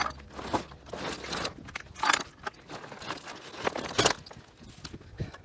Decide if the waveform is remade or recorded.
recorded